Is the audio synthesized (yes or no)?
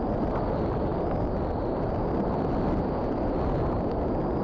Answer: no